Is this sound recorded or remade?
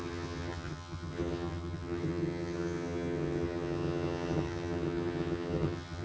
remade